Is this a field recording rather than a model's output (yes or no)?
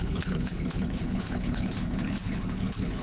no